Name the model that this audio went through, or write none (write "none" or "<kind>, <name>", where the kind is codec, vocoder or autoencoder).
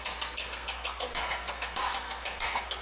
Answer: codec, SNAC